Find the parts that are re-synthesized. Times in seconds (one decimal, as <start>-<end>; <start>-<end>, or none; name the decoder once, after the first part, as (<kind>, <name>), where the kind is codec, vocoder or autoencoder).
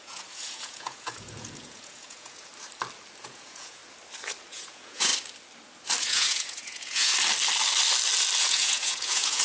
0.0-2.5 (vocoder, Vocos); 3.2-3.8; 4.5-5.1; 6.0-7.1; 8.4-9.4